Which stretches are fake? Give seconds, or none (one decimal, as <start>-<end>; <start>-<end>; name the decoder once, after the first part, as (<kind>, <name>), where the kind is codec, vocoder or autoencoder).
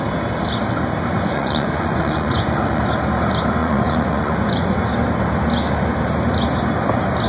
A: 1.1-2.8 (vocoder, Vocos); 3.6-4.8